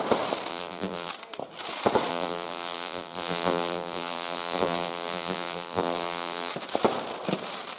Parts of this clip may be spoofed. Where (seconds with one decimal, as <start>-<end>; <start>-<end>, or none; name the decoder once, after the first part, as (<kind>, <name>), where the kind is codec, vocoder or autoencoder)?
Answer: 0.5-1.1 (vocoder, BigVGAN v2); 2.1-6.5